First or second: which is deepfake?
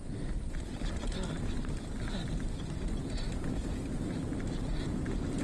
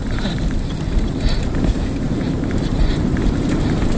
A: second